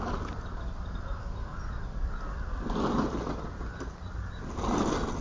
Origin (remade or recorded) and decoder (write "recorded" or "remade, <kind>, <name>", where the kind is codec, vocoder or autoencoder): recorded